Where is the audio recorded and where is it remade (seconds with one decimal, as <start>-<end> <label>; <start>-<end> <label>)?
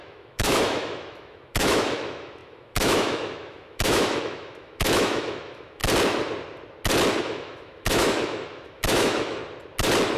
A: 0.0-5.8 remade; 5.8-7.2 recorded; 7.2-9.4 remade; 9.4-10.2 recorded